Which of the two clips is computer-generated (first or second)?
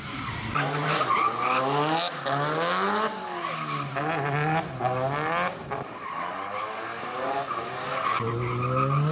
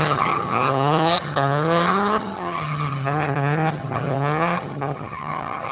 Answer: second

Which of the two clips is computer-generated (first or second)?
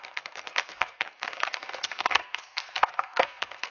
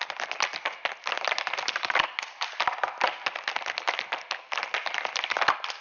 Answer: first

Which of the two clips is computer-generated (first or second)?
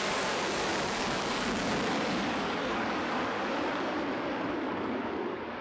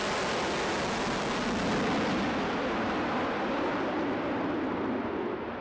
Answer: first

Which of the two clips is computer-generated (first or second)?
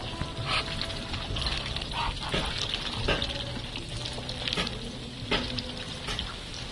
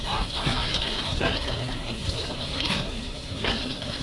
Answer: second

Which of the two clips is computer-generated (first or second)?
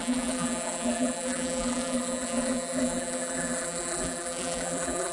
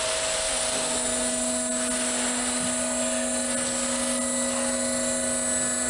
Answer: first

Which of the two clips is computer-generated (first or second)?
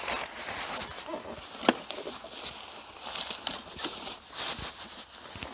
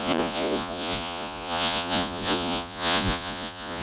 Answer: second